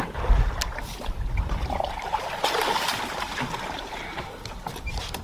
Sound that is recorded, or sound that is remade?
recorded